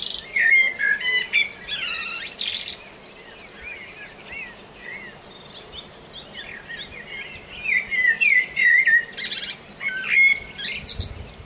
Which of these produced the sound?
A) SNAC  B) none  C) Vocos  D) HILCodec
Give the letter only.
B